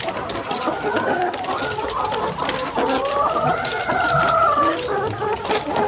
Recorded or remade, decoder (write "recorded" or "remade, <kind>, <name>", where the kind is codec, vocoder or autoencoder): recorded